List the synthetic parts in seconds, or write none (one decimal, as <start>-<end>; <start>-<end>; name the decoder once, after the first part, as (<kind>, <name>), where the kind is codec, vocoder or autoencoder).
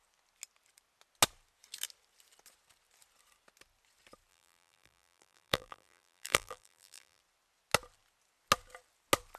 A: 4.3-7.2 (vocoder, BigVGAN v2)